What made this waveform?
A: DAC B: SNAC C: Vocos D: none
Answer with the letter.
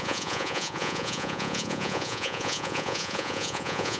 C